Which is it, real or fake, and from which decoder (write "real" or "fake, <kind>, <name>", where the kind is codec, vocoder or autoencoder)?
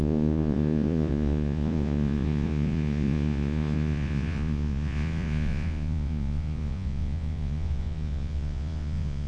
fake, vocoder, Vocos